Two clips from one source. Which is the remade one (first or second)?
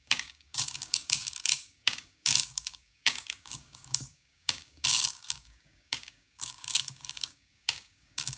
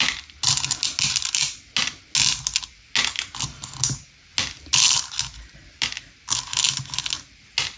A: first